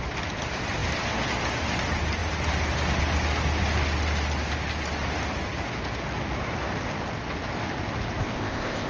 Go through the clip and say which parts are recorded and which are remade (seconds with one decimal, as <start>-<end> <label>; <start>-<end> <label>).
0.0-8.2 recorded; 8.2-8.9 remade